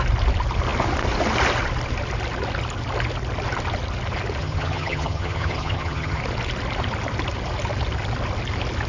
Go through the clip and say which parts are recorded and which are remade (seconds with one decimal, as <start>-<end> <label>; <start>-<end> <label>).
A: 0.0-4.4 recorded; 4.4-6.2 remade; 6.2-8.9 recorded